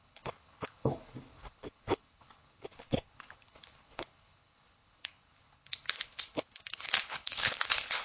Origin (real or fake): fake